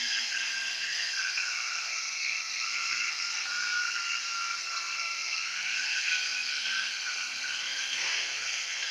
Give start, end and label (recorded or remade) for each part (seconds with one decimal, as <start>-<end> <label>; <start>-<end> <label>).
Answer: 0.0-8.9 remade